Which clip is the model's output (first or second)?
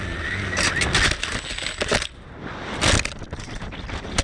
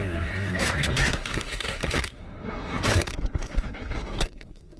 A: second